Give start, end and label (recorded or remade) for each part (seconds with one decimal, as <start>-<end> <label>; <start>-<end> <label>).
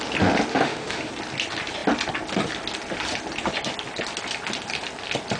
0.0-0.5 recorded; 0.5-1.1 remade; 1.1-5.4 recorded